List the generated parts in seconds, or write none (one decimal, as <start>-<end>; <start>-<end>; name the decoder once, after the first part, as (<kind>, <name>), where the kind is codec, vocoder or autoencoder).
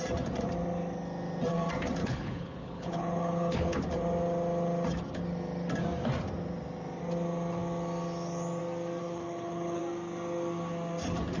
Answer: 2.0-3.8 (codec, HILCodec); 9.0-9.8